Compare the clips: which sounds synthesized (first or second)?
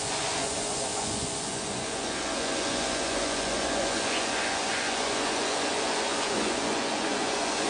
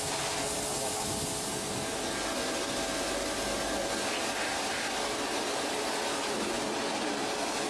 first